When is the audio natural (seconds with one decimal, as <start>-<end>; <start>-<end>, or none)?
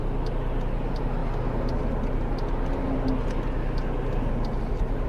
0.0-5.1